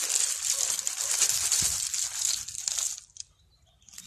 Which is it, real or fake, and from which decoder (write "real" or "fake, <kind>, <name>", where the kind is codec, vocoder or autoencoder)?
real